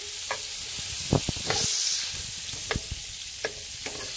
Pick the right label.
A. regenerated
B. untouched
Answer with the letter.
B